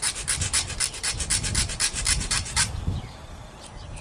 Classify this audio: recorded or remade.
remade